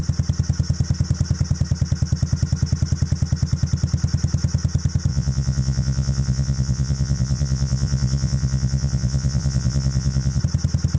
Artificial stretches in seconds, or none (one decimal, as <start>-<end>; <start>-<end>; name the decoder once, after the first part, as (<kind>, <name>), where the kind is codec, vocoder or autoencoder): 5.1-10.4 (vocoder, Vocos)

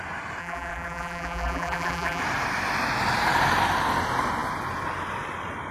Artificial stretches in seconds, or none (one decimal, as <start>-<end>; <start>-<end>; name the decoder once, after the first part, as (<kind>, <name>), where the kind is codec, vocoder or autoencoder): 0.4-2.2 (vocoder, BigVGAN v2)

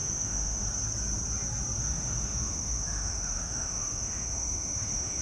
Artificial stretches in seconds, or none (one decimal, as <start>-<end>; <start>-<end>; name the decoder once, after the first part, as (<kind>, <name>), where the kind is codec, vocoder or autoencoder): 0.0-0.7 (autoencoder, DAC-VAE); 1.8-5.2